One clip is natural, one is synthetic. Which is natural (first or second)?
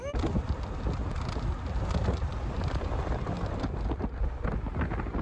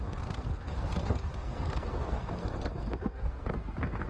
first